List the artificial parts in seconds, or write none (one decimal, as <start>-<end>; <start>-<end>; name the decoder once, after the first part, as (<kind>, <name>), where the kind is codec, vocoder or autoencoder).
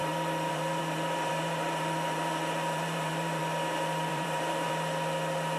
0.0-3.4 (vocoder, BigVGAN v2); 4.1-4.7